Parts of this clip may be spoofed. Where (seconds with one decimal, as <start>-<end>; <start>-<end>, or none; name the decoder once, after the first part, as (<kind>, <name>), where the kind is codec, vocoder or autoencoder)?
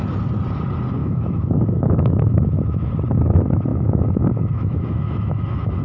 1.0-2.9 (autoencoder, DAC-VAE); 3.7-5.8